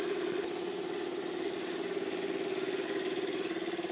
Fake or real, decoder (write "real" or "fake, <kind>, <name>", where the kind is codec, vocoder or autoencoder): real